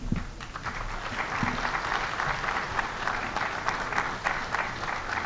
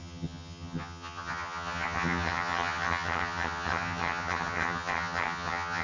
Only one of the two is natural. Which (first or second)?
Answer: first